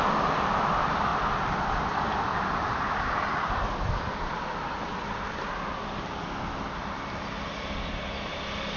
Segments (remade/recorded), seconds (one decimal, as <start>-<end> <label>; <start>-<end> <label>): 0.0-2.3 recorded; 2.3-3.7 remade; 3.7-8.8 recorded